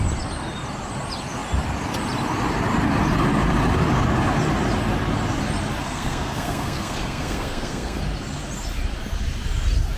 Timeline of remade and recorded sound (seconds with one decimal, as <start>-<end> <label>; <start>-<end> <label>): 0.0-5.8 recorded; 5.8-8.0 remade; 8.0-10.0 recorded